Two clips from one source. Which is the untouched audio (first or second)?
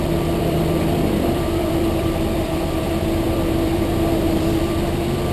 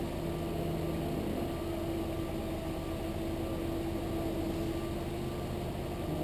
second